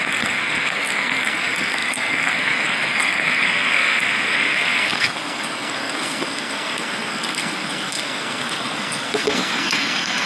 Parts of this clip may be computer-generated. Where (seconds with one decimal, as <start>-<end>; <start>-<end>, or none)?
0.0-10.3